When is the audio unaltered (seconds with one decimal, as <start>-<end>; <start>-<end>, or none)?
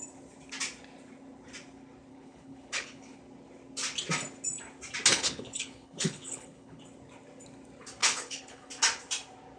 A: 0.0-2.1; 3.2-5.1; 6.8-8.0; 8.7-9.6